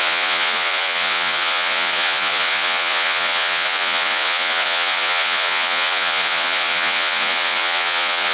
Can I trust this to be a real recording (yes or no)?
no